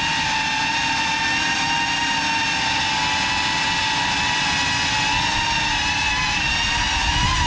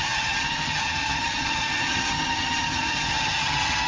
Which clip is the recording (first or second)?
first